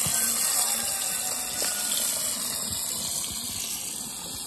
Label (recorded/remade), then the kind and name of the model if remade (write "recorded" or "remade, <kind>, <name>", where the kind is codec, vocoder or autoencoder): recorded